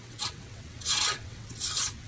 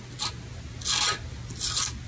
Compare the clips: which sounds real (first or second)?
second